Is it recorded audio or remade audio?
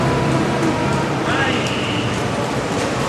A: remade